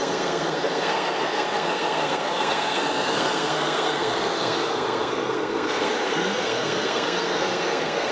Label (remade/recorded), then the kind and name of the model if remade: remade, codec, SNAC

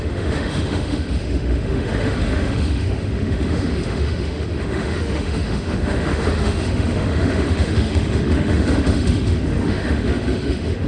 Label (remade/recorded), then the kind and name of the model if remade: remade, autoencoder, DAC-VAE